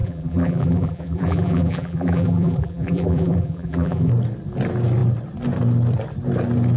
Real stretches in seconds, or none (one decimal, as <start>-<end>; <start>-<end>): 4.1-6.8